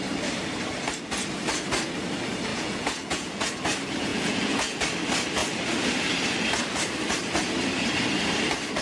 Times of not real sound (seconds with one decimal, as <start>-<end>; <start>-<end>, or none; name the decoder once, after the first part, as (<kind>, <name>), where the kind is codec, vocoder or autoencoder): 2.5-3.4 (vocoder, Vocos); 4.1-4.8